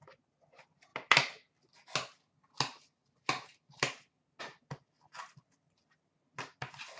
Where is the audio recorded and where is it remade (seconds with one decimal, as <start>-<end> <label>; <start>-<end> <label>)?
0.0-7.0 recorded